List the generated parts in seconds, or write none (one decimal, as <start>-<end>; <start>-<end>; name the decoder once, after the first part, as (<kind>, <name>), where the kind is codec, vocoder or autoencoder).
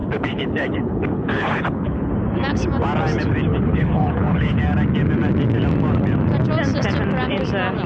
0.0-2.1 (codec, HILCodec); 3.5-4.6